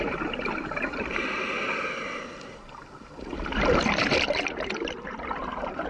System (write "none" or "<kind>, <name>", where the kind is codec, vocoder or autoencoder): vocoder, BigVGAN v2